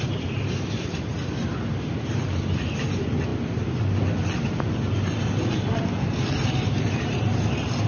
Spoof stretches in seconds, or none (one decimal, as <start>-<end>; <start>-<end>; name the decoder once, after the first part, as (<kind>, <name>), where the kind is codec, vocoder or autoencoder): none